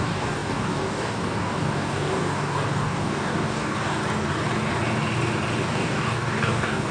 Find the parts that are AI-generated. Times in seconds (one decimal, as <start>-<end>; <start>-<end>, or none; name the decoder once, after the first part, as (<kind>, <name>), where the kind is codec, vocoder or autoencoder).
0.0-4.0 (codec, DAC); 5.7-6.9